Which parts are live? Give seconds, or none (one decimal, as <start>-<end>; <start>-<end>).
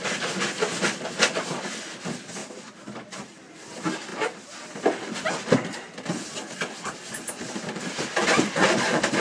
0.0-9.2